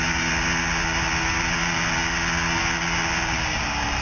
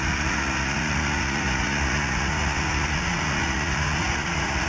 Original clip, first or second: first